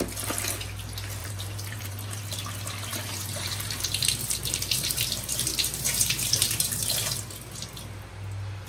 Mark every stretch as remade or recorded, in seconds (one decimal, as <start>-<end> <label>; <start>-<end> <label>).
0.0-1.2 recorded; 1.2-2.2 remade; 2.2-2.9 recorded; 2.9-7.1 remade; 7.1-8.7 recorded